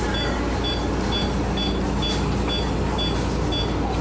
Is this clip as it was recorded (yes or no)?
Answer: yes